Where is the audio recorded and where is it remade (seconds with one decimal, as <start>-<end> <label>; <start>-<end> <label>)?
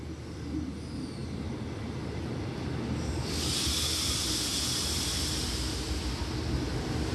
0.0-7.1 recorded